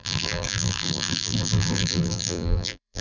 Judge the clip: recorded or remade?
remade